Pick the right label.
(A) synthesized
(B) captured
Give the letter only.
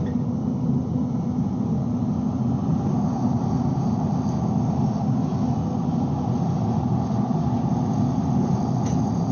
B